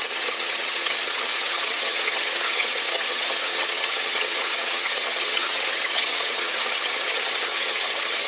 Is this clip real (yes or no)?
no